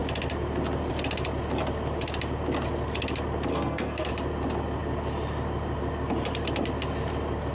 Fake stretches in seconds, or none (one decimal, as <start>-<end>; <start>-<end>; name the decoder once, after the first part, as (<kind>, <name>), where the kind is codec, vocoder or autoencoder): 3.5-4.1 (codec, SNAC)